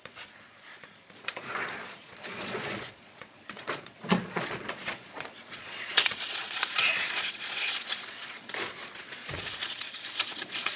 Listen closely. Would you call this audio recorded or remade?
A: remade